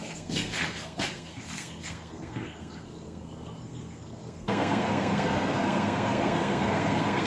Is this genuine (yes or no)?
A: no